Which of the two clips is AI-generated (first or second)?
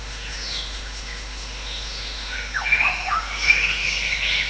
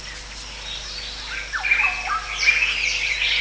first